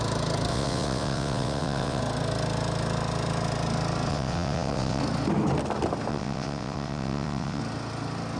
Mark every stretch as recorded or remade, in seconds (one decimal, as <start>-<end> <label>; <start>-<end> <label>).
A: 0.0-0.5 recorded; 0.5-2.0 remade; 2.0-4.1 recorded; 4.1-5.0 remade; 5.0-6.1 recorded; 6.1-7.6 remade; 7.6-8.4 recorded